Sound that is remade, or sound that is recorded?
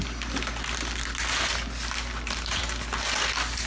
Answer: recorded